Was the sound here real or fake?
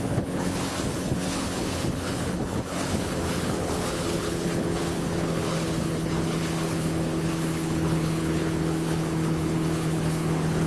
fake